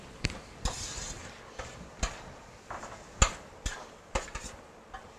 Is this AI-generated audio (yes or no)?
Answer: no